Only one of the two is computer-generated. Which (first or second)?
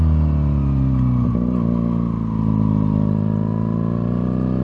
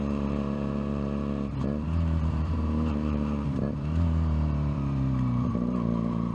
second